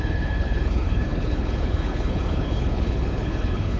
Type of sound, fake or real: fake